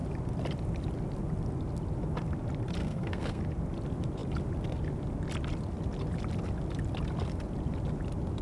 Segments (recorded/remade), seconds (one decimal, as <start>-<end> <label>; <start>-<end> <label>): 0.0-2.8 recorded; 2.8-3.4 remade; 3.4-8.4 recorded